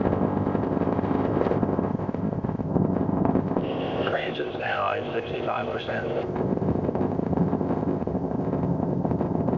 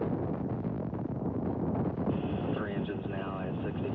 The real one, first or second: second